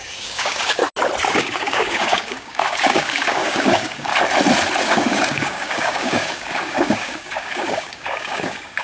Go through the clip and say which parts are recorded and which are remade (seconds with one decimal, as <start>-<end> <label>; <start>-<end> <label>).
0.0-0.8 remade; 0.8-1.3 recorded; 1.3-4.1 remade; 4.1-4.8 recorded; 4.8-8.8 remade